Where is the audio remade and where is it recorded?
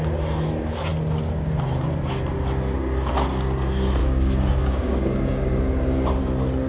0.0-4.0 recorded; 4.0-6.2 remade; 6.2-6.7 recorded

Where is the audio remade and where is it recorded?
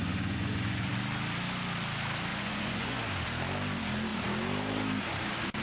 0.0-0.9 remade; 0.9-2.3 recorded; 2.3-3.0 remade; 3.0-5.6 recorded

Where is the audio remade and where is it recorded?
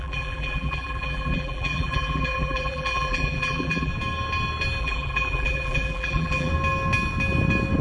0.0-3.9 remade; 3.9-4.8 recorded; 4.8-6.5 remade; 6.5-7.8 recorded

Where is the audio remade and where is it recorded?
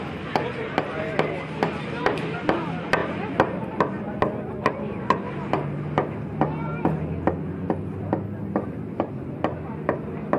0.0-3.0 recorded; 3.0-3.8 remade; 3.8-10.4 recorded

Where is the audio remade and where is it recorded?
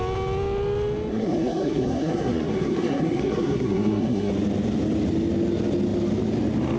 0.0-1.1 recorded; 1.1-4.3 remade; 4.3-6.8 recorded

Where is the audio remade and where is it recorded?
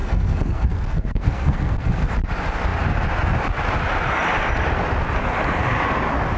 0.0-2.1 remade; 2.1-6.4 recorded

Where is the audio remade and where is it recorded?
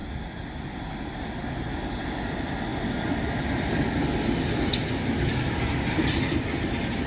0.0-7.1 recorded